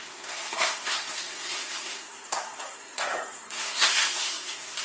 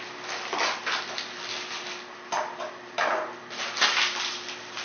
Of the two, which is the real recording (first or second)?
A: second